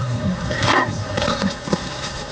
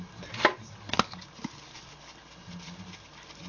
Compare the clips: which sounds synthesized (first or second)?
first